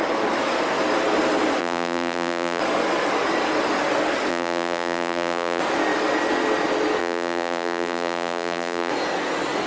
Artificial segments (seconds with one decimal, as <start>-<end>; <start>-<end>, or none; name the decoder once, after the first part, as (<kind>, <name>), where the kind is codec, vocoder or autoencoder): 1.6-2.6 (vocoder, BigVGAN v2); 4.3-5.6; 7.0-8.9